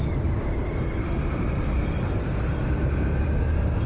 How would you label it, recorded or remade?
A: remade